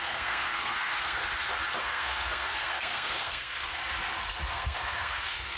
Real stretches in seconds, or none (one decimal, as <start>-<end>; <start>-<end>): 1.2-1.8; 3.8-4.5